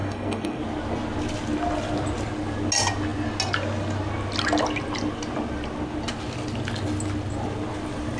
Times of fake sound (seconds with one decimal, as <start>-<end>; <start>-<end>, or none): 0.0-0.6